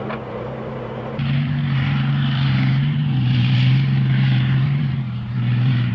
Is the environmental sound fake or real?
fake